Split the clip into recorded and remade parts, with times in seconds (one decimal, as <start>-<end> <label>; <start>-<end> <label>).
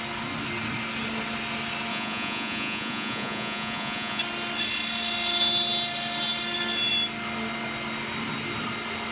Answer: 0.0-1.9 recorded; 1.9-4.2 remade; 4.2-9.1 recorded